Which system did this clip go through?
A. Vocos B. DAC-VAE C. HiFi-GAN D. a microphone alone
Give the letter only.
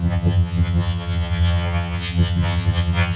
C